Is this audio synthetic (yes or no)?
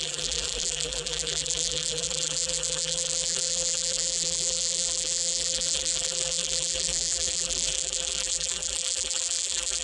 yes